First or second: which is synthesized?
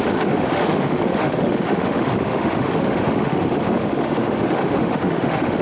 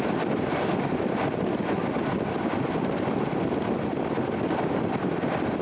first